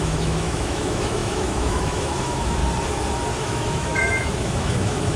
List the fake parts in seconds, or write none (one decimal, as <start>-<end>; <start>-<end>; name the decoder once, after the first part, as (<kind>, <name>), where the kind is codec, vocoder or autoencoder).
0.0-2.6 (autoencoder, DAC-VAE); 3.4-5.2